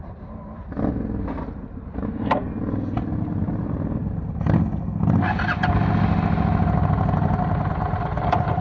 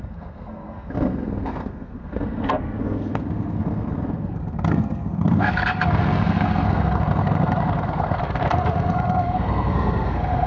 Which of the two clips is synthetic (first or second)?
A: second